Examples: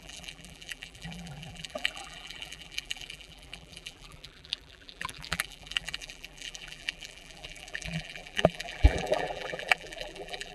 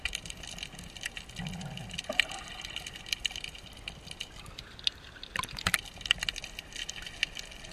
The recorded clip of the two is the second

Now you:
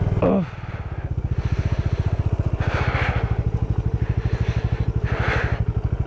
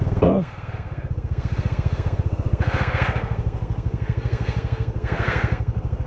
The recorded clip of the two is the first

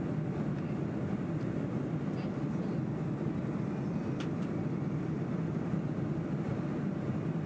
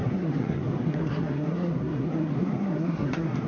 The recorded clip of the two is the first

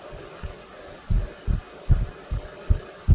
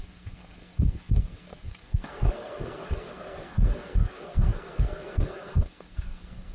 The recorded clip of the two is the first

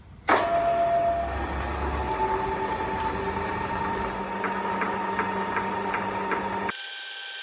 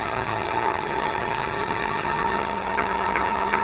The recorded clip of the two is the first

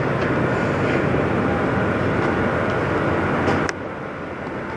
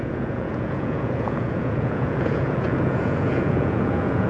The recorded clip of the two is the first